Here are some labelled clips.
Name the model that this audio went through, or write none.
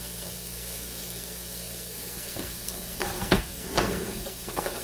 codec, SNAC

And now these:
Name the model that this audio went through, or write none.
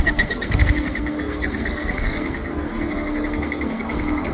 codec, SNAC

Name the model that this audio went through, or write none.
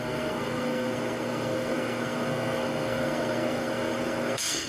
codec, SNAC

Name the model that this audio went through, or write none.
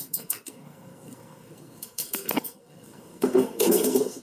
codec, SNAC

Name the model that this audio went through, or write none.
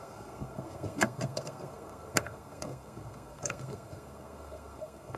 codec, SNAC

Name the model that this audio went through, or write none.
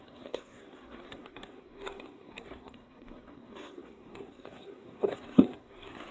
codec, SNAC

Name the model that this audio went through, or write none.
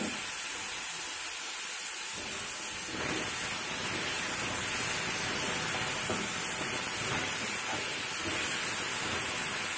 none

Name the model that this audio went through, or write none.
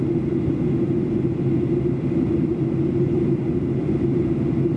none